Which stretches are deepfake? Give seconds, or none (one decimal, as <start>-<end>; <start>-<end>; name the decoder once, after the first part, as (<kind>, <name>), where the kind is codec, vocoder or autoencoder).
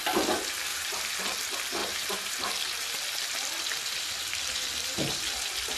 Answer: 0.7-1.2 (vocoder, BigVGAN v2); 1.8-2.6